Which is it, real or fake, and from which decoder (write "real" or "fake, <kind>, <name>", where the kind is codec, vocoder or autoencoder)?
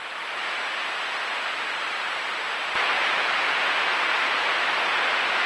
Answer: real